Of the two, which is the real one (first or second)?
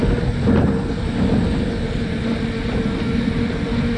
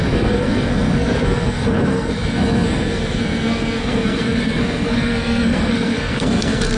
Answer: first